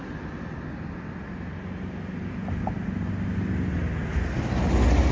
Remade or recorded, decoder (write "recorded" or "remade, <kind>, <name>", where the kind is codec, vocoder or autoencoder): recorded